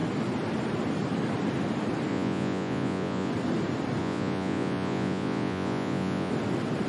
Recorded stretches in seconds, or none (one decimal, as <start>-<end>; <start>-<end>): 0.0-2.1; 3.3-4.0; 6.3-6.9